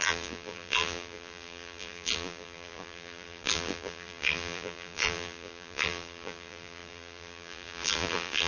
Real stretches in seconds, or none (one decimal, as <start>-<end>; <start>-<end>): none